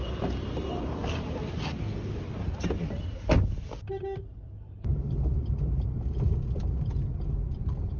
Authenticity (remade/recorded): recorded